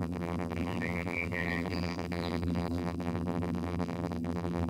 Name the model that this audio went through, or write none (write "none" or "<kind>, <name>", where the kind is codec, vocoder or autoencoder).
vocoder, BigVGAN v2